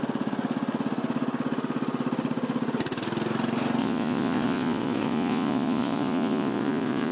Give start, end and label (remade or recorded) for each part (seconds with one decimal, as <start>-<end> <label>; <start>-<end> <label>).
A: 0.0-3.8 recorded; 3.8-7.1 remade